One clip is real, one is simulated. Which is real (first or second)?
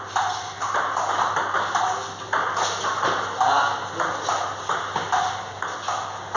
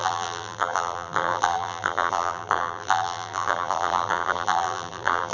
first